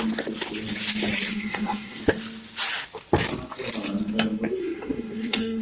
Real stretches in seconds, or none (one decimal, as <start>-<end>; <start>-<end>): 0.0-1.3; 2.0-4.6